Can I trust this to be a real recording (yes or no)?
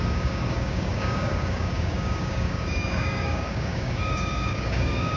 no